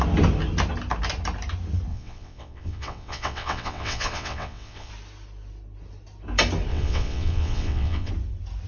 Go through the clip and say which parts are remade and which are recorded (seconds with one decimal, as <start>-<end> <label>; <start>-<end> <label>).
0.0-1.9 recorded; 1.9-4.9 remade; 4.9-6.7 recorded; 6.7-8.1 remade; 8.1-8.7 recorded